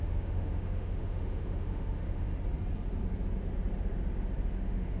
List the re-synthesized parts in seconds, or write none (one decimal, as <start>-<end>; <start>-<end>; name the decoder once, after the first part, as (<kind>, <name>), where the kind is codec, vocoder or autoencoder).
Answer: 0.0-2.3 (autoencoder, DAC-VAE); 4.5-5.0